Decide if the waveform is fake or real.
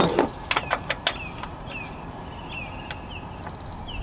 real